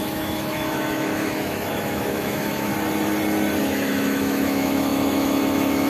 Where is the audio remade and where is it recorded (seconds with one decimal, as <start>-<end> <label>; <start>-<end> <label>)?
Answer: 0.0-2.7 remade; 2.7-3.6 recorded; 3.6-5.9 remade